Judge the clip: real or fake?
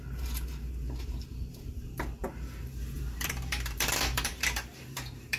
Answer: fake